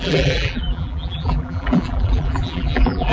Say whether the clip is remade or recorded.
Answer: remade